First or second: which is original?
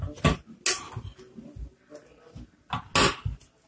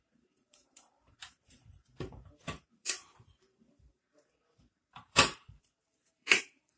first